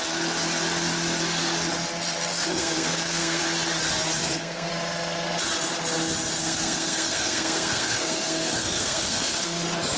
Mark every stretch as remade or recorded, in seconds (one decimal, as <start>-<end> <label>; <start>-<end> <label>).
0.0-2.3 recorded; 2.3-3.4 remade; 3.4-4.2 recorded; 4.2-4.7 remade; 4.7-6.4 recorded; 6.4-9.6 remade; 9.6-10.0 recorded